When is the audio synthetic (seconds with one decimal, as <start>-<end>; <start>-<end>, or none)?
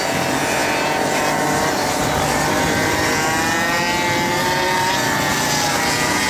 none